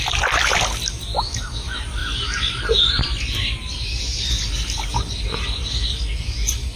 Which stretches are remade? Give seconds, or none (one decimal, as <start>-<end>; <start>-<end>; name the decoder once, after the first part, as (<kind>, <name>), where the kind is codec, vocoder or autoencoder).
none